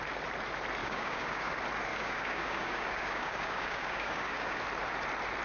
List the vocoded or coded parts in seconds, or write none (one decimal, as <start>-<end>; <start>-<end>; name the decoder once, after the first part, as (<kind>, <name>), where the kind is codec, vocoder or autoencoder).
0.8-1.5 (codec, DAC); 1.9-4.6